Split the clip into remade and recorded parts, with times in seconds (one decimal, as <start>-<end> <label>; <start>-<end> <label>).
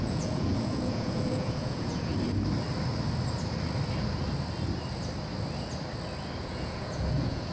0.0-2.1 remade; 2.1-6.4 recorded; 6.4-7.5 remade